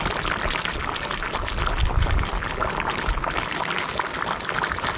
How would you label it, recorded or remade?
recorded